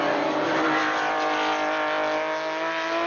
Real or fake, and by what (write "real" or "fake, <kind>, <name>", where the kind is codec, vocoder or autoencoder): real